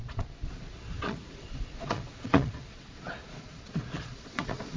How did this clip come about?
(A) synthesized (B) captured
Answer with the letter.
A